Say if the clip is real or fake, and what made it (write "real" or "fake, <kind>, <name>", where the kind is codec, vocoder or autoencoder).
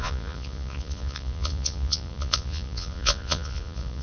fake, vocoder, Vocos